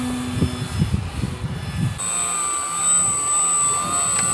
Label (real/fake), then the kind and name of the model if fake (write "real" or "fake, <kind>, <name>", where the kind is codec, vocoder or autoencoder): real